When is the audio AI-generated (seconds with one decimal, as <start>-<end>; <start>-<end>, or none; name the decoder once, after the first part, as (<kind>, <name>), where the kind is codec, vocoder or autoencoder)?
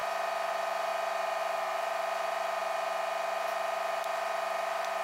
0.5-0.9 (vocoder, BigVGAN v2); 1.4-2.6; 3.5-5.0